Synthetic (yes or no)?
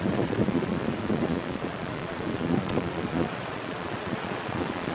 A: yes